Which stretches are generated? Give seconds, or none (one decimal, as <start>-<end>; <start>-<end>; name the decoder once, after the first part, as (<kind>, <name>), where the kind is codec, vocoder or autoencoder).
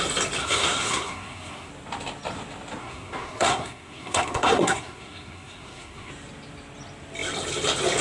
0.4-1.7 (codec, SNAC); 2.8-6.1